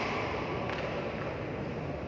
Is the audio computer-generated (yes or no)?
no